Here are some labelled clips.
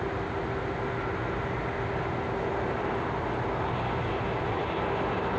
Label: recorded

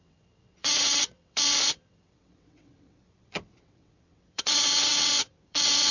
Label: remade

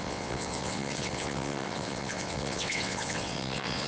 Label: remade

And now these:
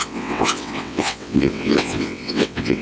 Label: remade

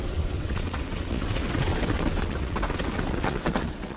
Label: remade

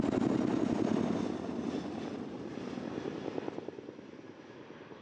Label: recorded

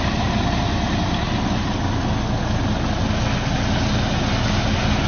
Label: recorded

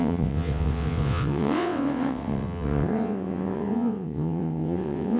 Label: remade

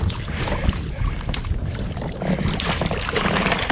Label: recorded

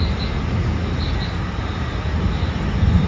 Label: recorded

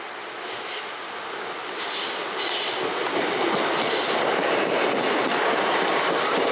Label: recorded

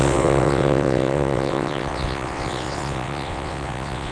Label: remade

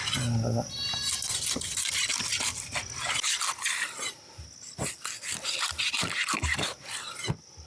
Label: recorded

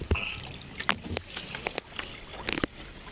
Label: recorded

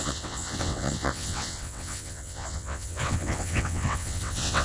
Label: remade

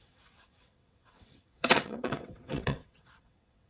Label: remade